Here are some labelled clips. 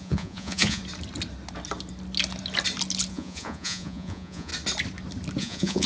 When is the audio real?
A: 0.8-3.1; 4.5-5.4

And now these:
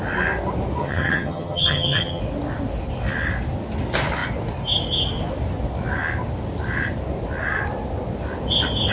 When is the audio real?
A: 0.0-0.8; 2.2-8.9

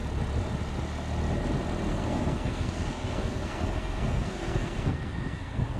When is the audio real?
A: 0.0-1.9

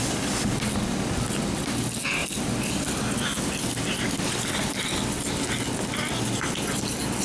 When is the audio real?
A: 0.0-7.2